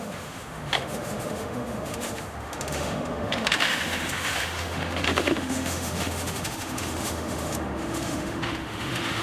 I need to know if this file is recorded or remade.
remade